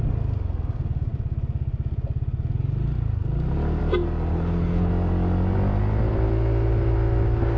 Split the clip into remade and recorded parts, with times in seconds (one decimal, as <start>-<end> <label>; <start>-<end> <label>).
0.0-4.3 recorded; 4.3-4.9 remade; 4.9-7.6 recorded